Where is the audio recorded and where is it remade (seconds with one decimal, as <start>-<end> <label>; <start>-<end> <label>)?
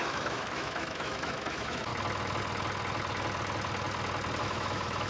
0.0-1.9 remade; 1.9-4.4 recorded; 4.4-5.1 remade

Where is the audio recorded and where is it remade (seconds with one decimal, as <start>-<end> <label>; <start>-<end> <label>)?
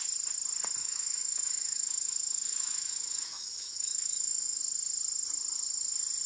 0.0-0.8 recorded; 0.8-4.6 remade; 4.6-6.3 recorded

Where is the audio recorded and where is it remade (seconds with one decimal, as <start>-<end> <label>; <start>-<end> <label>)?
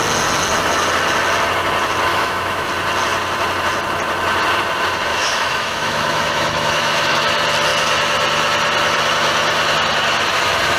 0.0-2.1 recorded; 2.1-2.7 remade; 2.7-5.1 recorded; 5.1-7.2 remade; 7.2-10.8 recorded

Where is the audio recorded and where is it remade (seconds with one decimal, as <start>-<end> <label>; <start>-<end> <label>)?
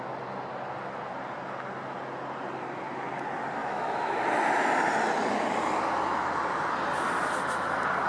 0.0-3.6 recorded; 3.6-4.2 remade; 4.2-8.1 recorded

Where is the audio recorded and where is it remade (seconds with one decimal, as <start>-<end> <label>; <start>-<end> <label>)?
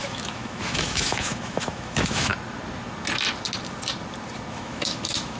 0.0-2.3 remade; 2.3-4.5 recorded; 4.5-5.4 remade